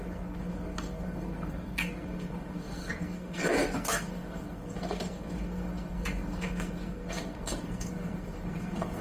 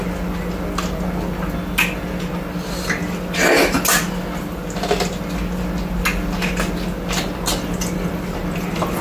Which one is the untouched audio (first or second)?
second